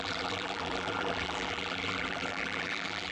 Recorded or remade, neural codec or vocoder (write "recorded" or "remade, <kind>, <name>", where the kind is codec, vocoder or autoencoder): remade, vocoder, BigVGAN v2